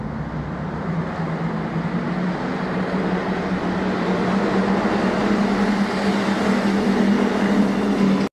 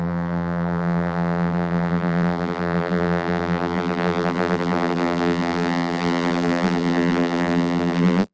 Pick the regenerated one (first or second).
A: second